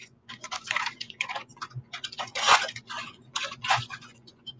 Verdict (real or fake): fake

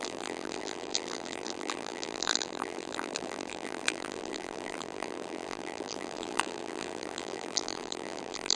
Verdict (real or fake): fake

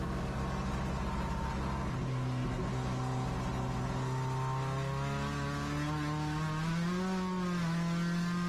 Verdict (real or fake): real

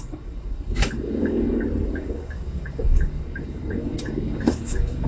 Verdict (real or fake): fake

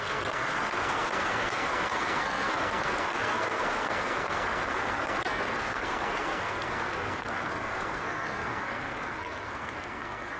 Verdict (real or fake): fake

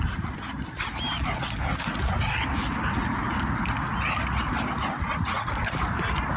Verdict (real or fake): real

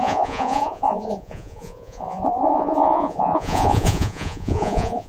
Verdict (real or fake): fake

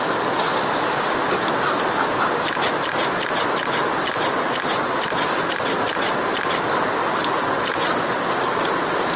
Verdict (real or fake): real